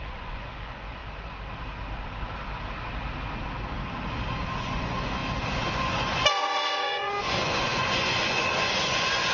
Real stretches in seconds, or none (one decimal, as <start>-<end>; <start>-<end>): 1.0-4.6; 5.2-5.7